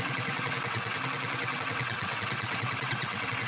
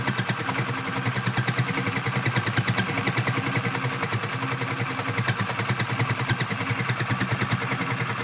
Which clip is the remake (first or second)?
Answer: first